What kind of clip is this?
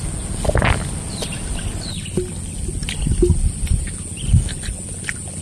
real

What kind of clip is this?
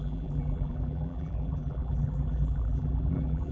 fake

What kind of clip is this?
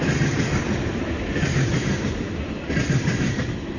fake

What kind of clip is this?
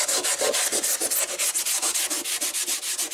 real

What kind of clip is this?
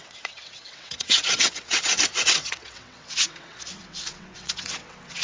fake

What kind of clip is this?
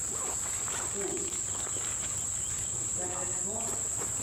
real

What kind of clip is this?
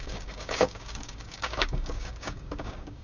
fake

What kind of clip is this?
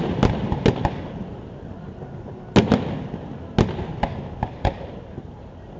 real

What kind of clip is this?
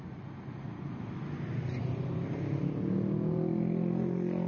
real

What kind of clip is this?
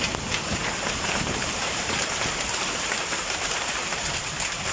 fake